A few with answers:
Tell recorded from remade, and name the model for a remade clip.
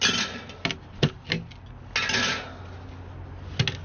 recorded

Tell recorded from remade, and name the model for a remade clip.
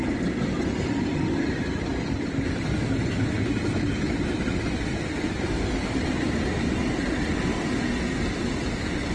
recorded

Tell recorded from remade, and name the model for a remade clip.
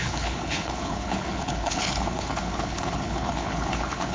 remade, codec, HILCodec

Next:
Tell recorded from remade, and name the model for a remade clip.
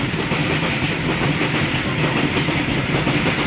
recorded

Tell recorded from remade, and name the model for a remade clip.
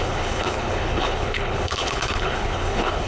remade, codec, HILCodec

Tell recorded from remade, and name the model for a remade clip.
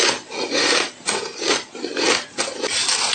recorded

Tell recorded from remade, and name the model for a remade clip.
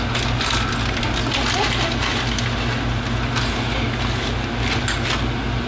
recorded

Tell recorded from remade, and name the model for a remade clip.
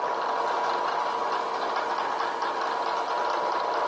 recorded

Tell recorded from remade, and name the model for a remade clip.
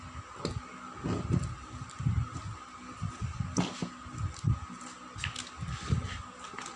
recorded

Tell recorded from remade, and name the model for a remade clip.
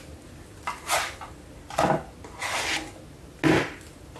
recorded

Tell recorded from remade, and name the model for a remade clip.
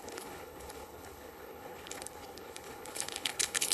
remade, codec, HILCodec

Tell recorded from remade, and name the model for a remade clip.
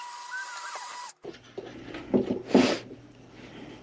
recorded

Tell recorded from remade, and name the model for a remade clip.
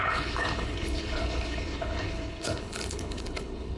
remade, codec, HILCodec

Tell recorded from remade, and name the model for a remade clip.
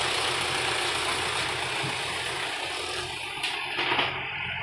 recorded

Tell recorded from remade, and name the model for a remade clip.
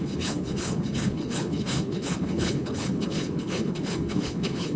remade, codec, HILCodec